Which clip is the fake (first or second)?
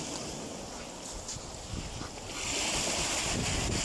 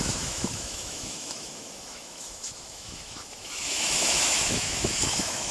second